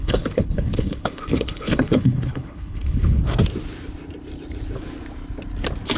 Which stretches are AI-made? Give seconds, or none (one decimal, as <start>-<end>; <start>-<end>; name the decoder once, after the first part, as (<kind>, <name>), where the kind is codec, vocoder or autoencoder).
0.0-3.2 (codec, HILCodec)